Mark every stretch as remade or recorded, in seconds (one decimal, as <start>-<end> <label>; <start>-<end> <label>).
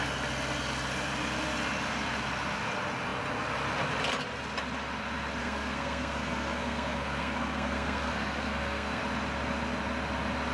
0.0-5.4 recorded; 5.4-9.0 remade; 9.0-10.5 recorded